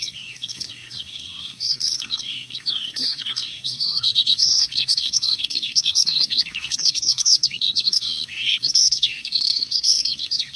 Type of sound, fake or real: fake